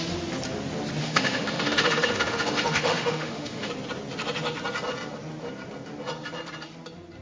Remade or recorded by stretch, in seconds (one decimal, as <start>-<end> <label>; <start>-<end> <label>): 0.0-1.0 recorded; 1.0-3.7 remade; 3.7-7.2 recorded